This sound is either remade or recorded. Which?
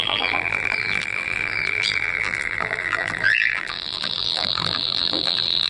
remade